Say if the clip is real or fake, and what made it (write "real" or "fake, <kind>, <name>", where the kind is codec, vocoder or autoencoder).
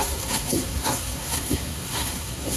fake, codec, SNAC